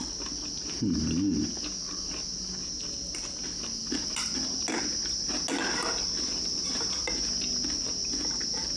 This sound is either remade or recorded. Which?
recorded